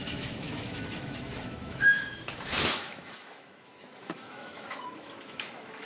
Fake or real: fake